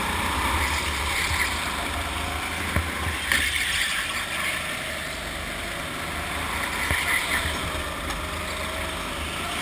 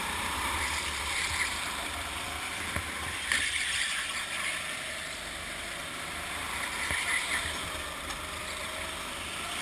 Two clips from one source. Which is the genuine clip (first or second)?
first